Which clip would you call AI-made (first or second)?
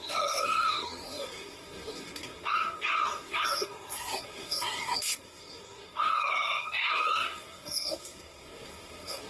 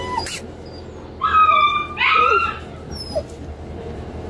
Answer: first